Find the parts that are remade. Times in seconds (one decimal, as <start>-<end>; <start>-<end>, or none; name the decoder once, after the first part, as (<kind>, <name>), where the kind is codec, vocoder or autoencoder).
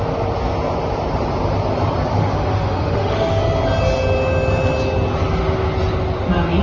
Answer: 2.2-3.4 (autoencoder, DAC-VAE)